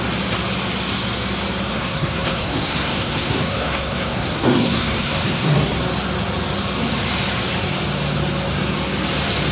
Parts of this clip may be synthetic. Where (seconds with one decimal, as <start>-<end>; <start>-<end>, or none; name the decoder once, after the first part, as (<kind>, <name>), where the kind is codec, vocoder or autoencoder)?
1.7-5.8 (codec, SNAC)